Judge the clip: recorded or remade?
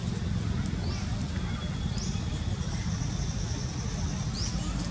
recorded